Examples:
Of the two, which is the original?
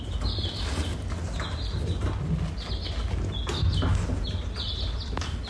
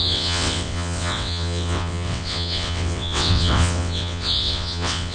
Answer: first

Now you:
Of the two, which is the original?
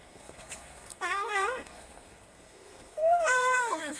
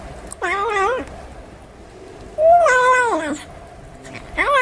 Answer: second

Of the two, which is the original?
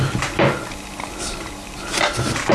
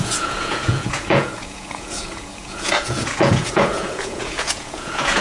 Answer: first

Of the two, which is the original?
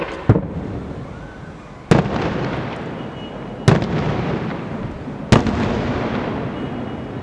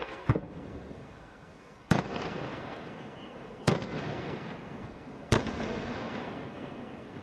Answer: first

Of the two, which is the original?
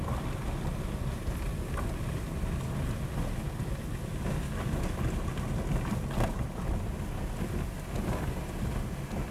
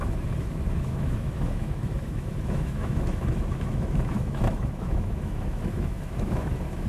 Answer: first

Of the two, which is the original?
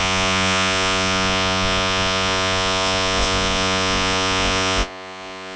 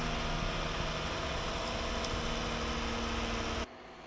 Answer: second